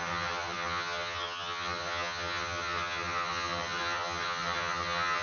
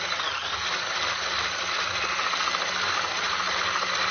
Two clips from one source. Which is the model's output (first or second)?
first